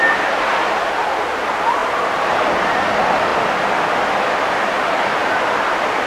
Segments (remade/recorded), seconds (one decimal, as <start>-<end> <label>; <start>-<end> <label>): 0.0-1.8 recorded; 1.8-2.4 remade; 2.4-6.1 recorded